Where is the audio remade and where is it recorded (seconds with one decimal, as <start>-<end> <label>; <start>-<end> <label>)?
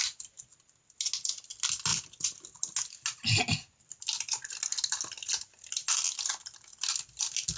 0.0-7.6 recorded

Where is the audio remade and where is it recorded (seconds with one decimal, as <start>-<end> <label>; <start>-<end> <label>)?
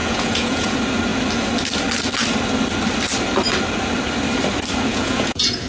0.0-0.7 remade; 0.7-4.9 recorded; 4.9-5.7 remade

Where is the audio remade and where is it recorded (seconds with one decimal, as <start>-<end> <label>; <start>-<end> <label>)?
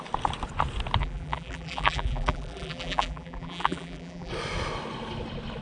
0.0-1.0 recorded; 1.0-4.3 remade; 4.3-5.6 recorded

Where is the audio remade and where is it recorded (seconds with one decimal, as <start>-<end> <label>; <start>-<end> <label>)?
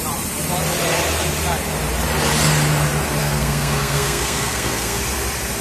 0.0-3.2 recorded; 3.2-5.0 remade; 5.0-5.6 recorded